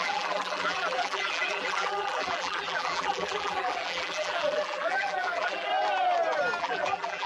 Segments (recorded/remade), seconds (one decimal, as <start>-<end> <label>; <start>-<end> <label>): 0.0-5.7 remade; 5.7-6.6 recorded; 6.6-7.3 remade